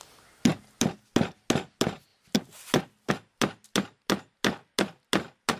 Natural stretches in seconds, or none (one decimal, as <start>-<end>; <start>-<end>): 0.0-5.6